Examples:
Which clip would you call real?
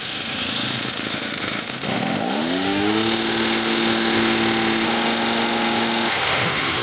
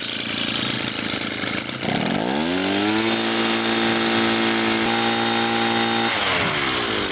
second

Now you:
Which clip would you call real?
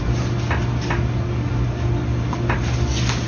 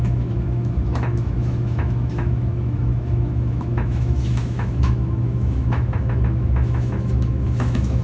first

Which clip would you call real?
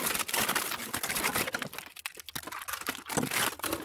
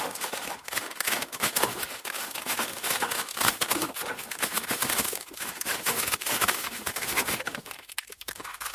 first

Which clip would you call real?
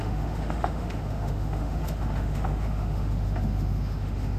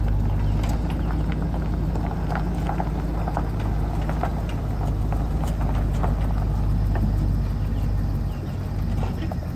second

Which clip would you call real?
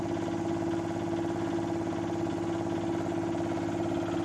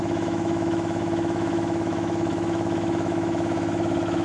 first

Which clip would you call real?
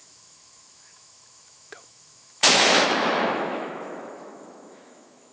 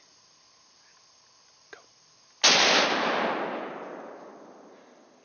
second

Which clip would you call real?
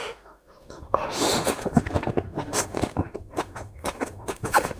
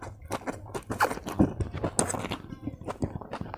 second